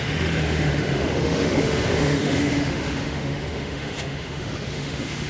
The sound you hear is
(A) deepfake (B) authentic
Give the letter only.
A